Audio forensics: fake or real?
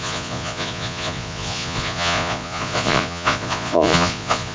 fake